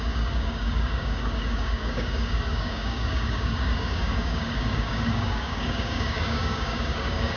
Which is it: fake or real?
fake